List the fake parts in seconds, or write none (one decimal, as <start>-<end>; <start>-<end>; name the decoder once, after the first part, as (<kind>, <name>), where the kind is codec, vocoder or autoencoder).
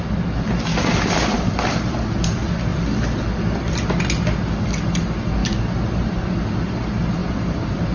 0.7-1.5 (vocoder, BigVGAN v2); 5.4-6.3; 7.2-7.9